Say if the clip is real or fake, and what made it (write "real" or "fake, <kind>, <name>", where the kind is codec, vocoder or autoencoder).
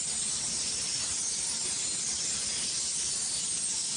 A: fake, vocoder, BigVGAN v2